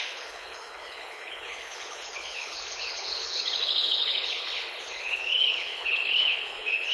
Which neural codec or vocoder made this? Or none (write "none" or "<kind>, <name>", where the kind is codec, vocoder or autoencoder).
codec, HILCodec